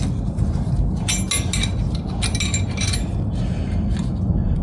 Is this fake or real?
real